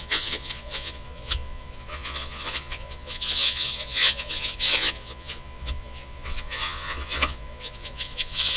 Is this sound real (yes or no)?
no